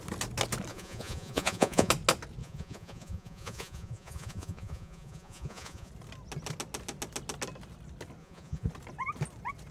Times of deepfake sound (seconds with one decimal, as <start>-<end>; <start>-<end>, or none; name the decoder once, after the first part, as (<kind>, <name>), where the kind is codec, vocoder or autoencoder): 0.7-1.9 (vocoder, Vocos); 2.4-5.9; 8.2-8.7